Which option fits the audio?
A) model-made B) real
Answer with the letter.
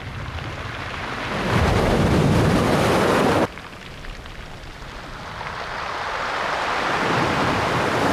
B